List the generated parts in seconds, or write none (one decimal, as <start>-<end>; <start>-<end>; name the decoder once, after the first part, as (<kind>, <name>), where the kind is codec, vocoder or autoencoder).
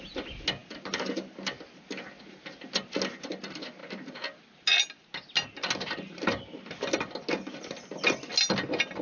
none